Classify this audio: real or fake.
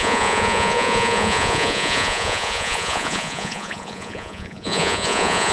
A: fake